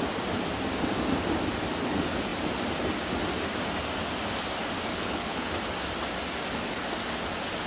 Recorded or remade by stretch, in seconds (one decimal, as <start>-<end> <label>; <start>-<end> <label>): 0.0-4.9 recorded; 4.9-5.5 remade; 5.5-7.7 recorded